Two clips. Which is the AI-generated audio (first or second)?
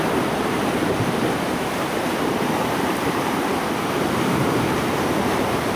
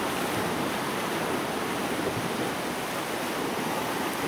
first